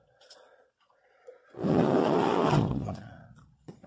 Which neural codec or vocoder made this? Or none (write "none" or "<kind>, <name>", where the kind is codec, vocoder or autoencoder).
vocoder, Vocos